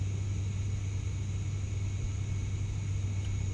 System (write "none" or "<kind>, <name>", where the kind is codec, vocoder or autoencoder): none